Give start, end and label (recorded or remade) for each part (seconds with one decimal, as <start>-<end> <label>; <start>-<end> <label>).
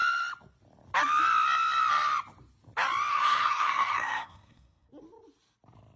0.0-3.1 recorded; 3.1-4.9 remade; 4.9-6.0 recorded